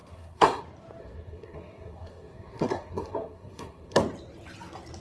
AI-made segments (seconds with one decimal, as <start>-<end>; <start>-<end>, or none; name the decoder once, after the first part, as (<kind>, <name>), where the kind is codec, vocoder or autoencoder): 0.0-0.6 (codec, SNAC); 1.0-4.0